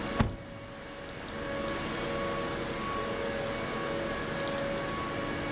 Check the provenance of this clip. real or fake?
real